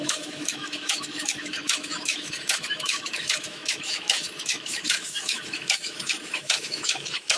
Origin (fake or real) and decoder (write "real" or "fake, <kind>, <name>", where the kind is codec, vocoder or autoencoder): fake, autoencoder, DAC-VAE